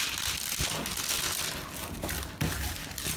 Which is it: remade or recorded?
recorded